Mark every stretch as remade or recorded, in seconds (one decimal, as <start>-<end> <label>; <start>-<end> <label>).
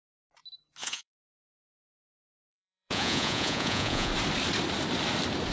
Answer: 0.0-0.8 recorded; 0.8-4.1 remade; 4.1-5.5 recorded